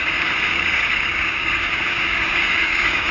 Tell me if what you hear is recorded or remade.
remade